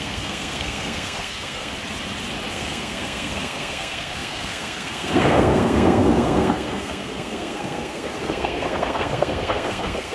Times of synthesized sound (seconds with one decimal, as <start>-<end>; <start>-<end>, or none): 0.0-1.7; 2.5-10.1